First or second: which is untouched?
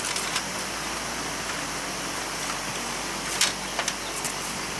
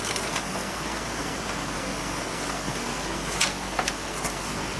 first